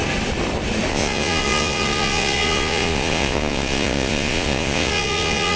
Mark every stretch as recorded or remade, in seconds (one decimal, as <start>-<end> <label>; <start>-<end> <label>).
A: 0.0-0.9 recorded; 0.9-5.6 remade